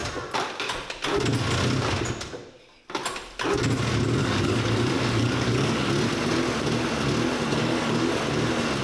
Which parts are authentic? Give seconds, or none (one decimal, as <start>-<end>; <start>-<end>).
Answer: 0.0-4.2; 5.9-7.6; 8.1-8.8